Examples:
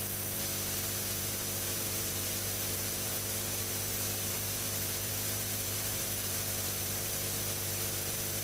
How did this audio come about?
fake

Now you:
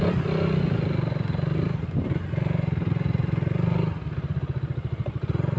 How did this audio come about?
real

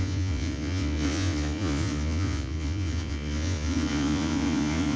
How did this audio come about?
fake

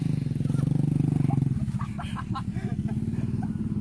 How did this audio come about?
real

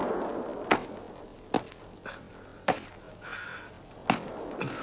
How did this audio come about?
real